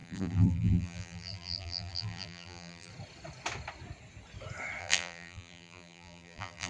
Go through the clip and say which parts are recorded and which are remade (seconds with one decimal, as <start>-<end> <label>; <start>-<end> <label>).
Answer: 0.0-2.9 remade; 2.9-4.8 recorded; 4.8-6.7 remade